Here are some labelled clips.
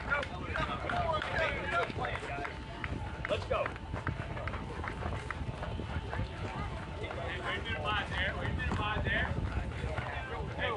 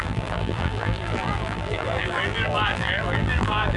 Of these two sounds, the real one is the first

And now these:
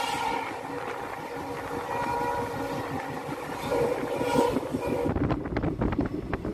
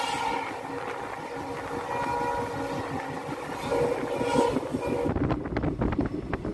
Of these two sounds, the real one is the second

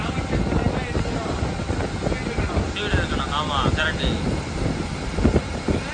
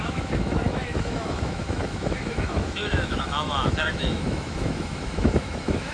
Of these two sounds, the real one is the first